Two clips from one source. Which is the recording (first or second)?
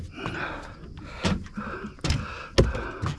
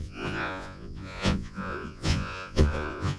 first